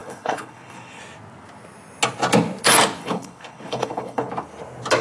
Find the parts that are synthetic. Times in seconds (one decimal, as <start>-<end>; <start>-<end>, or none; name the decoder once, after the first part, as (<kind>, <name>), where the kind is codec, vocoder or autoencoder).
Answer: 0.0-1.0 (codec, HILCodec); 3.0-4.3